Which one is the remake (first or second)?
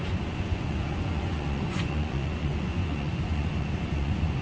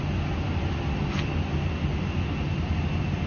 first